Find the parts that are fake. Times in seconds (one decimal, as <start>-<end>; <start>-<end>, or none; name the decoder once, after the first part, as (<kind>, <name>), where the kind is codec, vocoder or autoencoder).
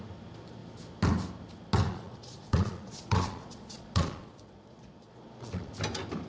1.9-5.7 (vocoder, Vocos)